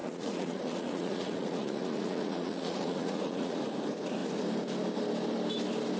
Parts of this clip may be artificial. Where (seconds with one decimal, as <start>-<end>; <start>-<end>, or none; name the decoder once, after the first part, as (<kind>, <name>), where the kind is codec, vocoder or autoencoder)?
0.0-3.6 (vocoder, Vocos)